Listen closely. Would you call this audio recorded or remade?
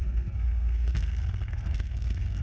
remade